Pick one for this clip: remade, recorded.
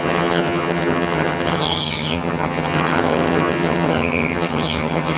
remade